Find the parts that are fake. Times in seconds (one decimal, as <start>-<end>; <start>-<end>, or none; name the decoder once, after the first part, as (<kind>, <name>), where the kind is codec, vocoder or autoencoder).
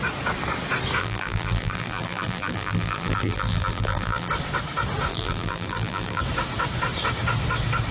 1.0-4.3 (vocoder, BigVGAN v2); 5.1-6.2